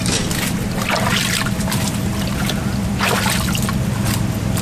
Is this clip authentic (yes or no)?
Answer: yes